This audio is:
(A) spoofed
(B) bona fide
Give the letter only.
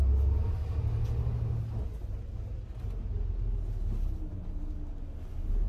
B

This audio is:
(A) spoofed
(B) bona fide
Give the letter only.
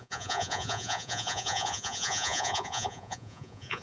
A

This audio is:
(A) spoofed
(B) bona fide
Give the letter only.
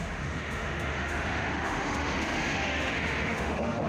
A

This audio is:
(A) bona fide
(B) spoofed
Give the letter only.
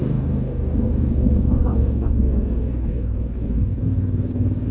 B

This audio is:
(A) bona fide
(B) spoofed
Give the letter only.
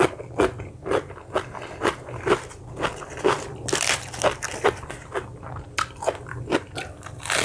A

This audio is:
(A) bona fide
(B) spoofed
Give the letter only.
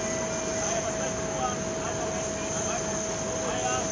A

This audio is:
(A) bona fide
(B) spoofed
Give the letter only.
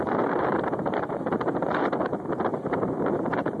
B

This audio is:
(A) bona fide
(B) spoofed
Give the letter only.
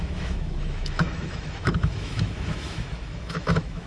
B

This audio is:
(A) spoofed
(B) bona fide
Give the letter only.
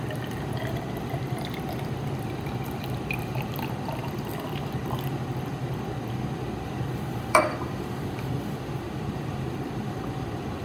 A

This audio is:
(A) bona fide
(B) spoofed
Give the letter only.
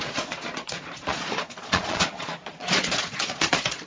B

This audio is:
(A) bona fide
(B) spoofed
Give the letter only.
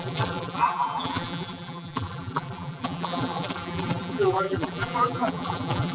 B